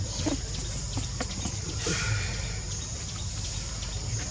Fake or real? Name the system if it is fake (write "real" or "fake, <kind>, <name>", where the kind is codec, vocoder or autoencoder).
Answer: real